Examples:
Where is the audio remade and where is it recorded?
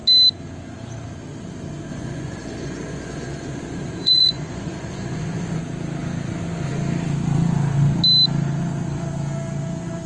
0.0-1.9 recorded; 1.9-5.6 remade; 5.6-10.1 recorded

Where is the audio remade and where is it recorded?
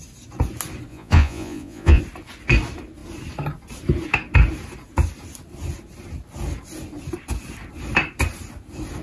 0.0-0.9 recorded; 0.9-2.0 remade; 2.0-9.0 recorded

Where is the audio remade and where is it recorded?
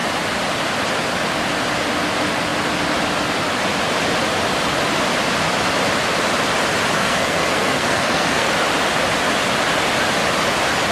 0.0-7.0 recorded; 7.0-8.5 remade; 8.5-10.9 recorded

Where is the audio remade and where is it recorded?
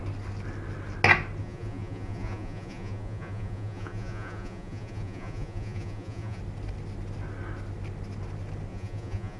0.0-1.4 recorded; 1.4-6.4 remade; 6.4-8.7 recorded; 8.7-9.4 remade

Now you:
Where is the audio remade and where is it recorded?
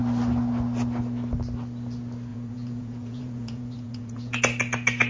0.0-2.3 recorded; 2.3-4.4 remade; 4.4-5.1 recorded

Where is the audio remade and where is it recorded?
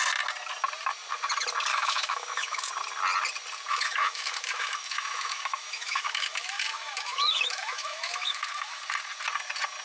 0.0-1.7 recorded; 1.7-2.7 remade; 2.7-3.7 recorded; 3.7-8.8 remade; 8.8-9.8 recorded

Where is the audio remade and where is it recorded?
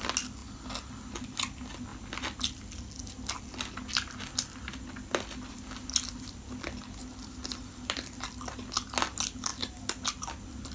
0.0-10.7 recorded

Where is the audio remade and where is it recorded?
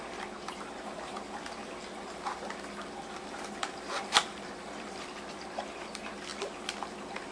0.0-7.3 recorded